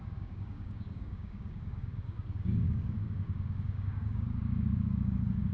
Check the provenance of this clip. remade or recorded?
remade